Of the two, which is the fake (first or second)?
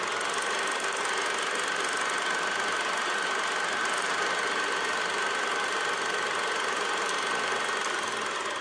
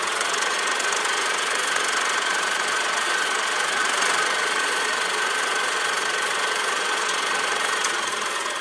second